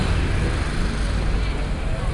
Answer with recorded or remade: recorded